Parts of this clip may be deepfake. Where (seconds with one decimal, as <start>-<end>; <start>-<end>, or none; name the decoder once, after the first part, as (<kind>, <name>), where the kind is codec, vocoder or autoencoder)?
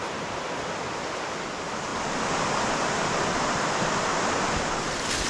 none